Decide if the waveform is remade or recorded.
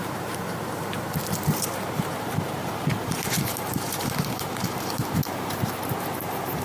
remade